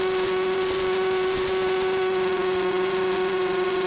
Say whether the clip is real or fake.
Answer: fake